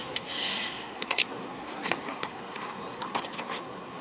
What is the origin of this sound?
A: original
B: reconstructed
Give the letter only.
B